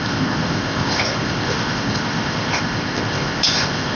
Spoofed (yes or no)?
yes